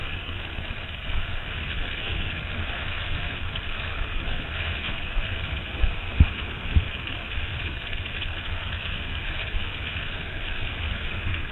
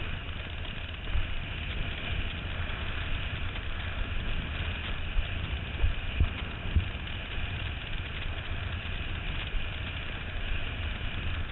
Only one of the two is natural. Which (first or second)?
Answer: second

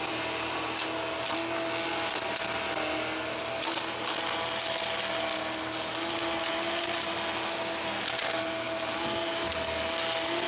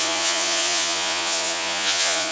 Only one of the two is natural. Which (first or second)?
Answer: first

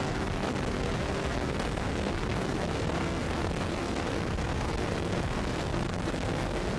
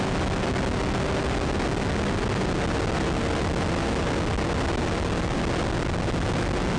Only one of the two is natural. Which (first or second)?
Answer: second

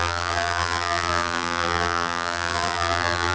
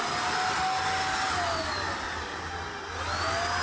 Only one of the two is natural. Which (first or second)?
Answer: second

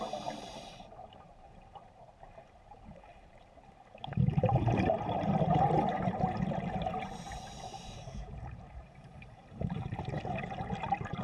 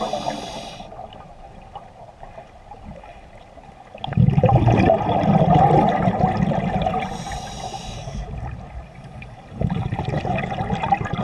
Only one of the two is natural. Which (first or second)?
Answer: second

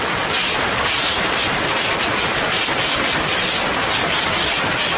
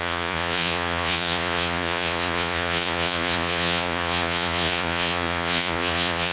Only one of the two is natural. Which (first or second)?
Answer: first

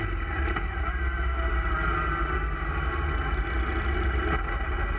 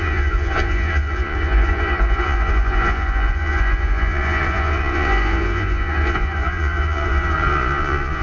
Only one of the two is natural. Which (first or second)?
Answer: first